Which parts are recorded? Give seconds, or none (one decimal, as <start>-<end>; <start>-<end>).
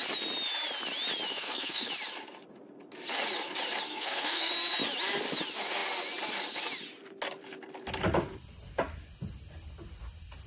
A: 0.0-1.3; 1.9-3.9; 4.5-10.5